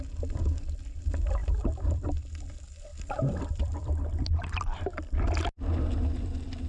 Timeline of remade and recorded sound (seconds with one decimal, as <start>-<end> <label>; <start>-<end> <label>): 0.0-1.4 recorded; 1.4-2.3 remade; 2.3-2.9 recorded; 2.9-4.2 remade; 4.2-6.7 recorded